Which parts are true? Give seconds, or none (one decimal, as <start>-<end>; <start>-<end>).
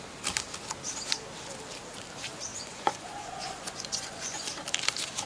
0.0-2.5; 4.5-5.3